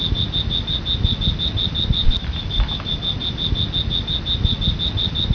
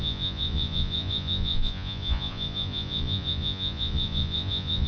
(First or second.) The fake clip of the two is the second